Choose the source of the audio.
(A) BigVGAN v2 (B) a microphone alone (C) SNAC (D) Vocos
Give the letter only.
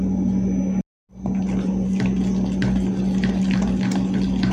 B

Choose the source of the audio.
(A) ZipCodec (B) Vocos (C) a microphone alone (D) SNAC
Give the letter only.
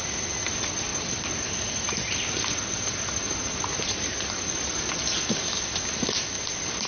C